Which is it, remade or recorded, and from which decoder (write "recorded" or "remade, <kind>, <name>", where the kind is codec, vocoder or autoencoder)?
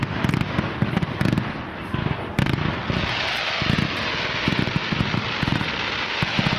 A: recorded